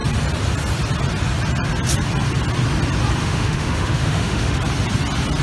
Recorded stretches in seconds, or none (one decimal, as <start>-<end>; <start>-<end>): 0.0-3.2; 4.6-5.4

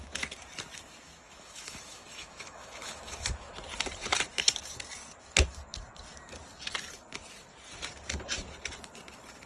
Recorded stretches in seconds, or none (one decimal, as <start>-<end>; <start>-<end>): 0.0-1.0; 3.5-9.5

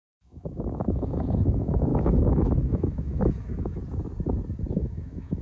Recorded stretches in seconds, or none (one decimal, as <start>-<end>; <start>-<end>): 3.8-4.7

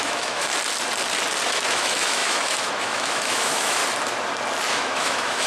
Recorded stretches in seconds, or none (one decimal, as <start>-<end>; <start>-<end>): 0.5-1.5; 3.8-4.7